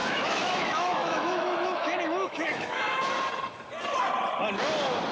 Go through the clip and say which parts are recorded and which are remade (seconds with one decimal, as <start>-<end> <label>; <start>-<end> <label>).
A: 0.0-3.1 remade; 3.1-5.1 recorded